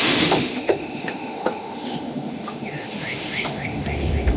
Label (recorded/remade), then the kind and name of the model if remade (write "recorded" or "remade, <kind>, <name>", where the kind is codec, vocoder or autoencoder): remade, autoencoder, DAC-VAE